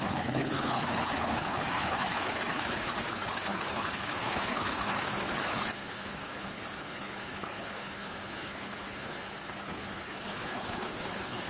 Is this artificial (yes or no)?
yes